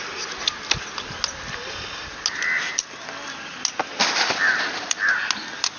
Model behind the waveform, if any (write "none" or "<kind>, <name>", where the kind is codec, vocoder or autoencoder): none